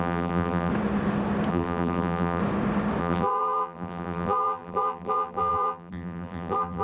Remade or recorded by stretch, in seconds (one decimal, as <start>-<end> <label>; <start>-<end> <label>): 0.0-0.7 remade; 0.7-1.5 recorded; 1.5-2.4 remade; 2.4-3.0 recorded; 3.0-6.8 remade